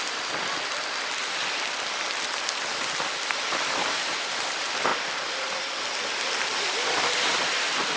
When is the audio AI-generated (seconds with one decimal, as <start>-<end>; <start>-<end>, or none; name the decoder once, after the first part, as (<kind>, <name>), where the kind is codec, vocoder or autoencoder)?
none